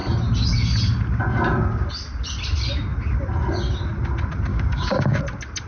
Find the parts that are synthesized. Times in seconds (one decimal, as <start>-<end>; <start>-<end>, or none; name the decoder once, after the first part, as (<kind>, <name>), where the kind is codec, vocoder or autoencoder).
4.5-5.2 (codec, DAC)